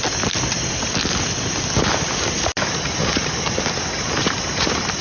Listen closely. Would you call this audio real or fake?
real